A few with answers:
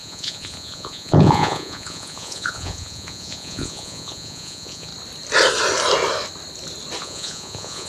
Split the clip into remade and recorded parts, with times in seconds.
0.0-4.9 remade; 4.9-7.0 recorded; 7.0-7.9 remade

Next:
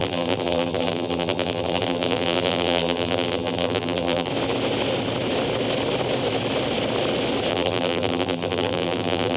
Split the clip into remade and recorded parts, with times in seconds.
0.0-4.3 remade; 4.3-7.5 recorded; 7.5-9.4 remade

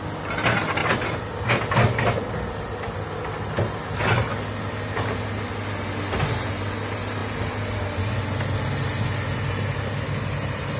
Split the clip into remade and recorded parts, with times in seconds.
0.0-10.8 recorded

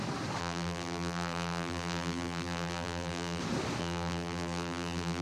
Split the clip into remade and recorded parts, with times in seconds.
0.0-0.4 recorded; 0.4-3.4 remade; 3.4-3.8 recorded; 3.8-5.2 remade

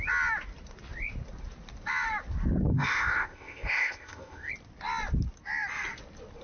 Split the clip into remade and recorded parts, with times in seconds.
0.0-2.7 recorded; 2.7-4.5 remade; 4.5-6.4 recorded